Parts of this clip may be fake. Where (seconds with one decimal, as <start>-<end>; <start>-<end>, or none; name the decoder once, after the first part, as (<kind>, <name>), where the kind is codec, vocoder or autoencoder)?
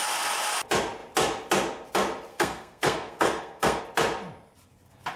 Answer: 2.3-3.8 (codec, SNAC)